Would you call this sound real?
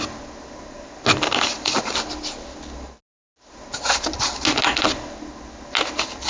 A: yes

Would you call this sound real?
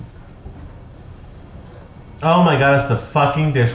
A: yes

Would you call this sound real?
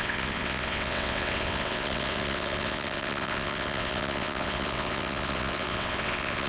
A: no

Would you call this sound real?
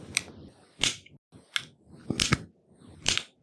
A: yes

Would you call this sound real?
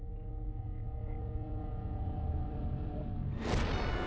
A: yes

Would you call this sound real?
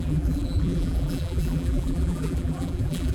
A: no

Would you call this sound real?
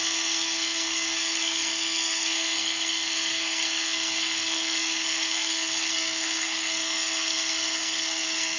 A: no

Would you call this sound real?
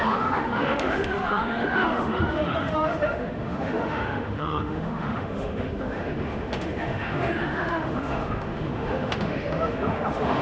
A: no